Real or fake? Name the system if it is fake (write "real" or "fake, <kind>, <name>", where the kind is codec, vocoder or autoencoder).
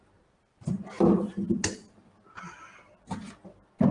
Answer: real